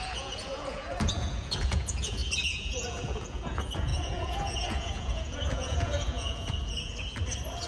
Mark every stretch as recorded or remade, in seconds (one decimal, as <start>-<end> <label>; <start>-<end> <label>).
0.0-6.9 remade; 6.9-7.7 recorded